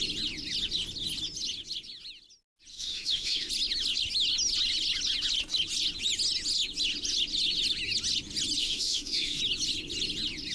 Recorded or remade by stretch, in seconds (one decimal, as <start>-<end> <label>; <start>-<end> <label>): 0.0-2.7 recorded; 2.7-3.5 remade; 3.5-8.6 recorded; 8.6-9.4 remade; 9.4-10.5 recorded